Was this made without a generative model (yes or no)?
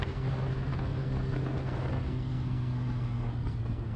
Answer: no